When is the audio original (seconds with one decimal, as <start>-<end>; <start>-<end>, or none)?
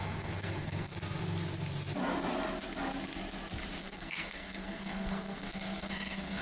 0.9-3.8